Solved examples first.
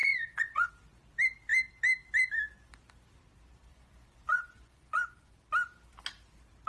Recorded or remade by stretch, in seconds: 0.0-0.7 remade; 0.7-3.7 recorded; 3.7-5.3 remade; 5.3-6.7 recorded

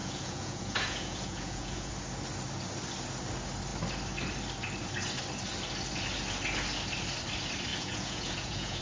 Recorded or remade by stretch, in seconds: 0.0-1.9 remade; 1.9-7.7 recorded; 7.7-8.8 remade

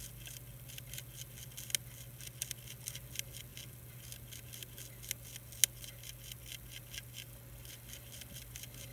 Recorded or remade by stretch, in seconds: 0.0-8.9 recorded

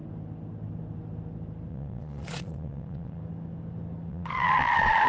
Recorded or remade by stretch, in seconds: 0.0-1.7 recorded; 1.7-3.2 remade; 3.2-4.1 recorded; 4.1-5.1 remade

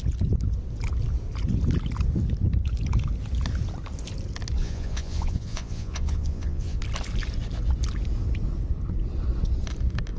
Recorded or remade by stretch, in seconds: 0.0-4.6 recorded; 4.6-6.8 remade; 6.8-10.2 recorded

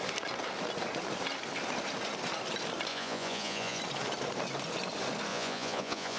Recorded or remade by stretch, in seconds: 0.0-2.9 recorded; 2.9-3.8 remade; 3.8-5.3 recorded; 5.3-6.2 remade

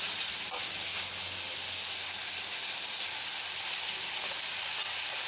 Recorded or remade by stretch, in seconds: 0.0-5.3 recorded

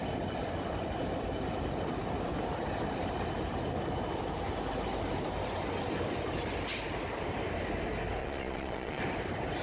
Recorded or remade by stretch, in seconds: 0.0-8.2 recorded; 8.2-9.0 remade; 9.0-9.6 recorded